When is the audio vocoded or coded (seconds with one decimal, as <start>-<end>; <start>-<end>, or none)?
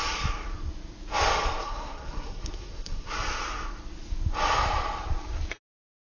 1.6-3.1